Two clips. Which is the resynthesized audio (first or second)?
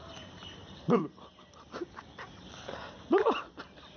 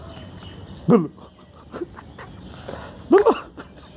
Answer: first